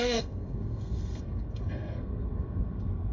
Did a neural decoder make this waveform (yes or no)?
yes